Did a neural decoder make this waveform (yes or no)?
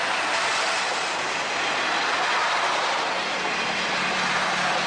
no